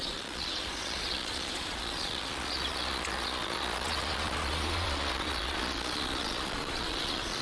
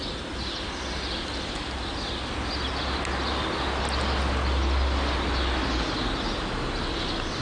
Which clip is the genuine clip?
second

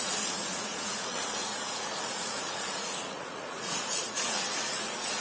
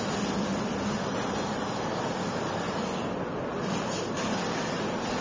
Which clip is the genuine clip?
second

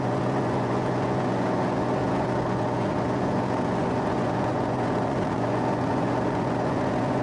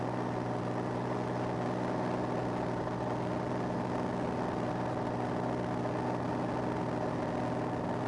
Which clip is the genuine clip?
second